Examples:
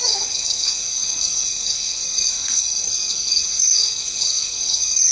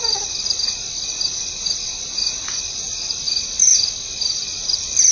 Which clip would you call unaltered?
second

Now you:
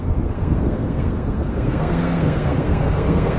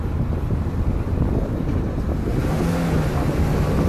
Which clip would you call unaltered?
second